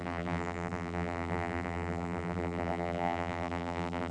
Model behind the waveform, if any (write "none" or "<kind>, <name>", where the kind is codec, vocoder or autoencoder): vocoder, BigVGAN v2